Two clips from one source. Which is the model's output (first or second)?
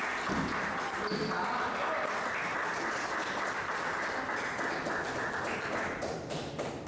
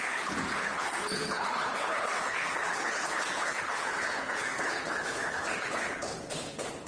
second